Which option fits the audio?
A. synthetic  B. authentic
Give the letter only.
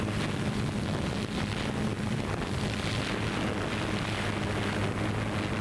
B